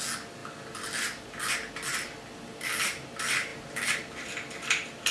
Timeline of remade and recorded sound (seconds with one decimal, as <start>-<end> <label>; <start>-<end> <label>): 0.0-5.1 recorded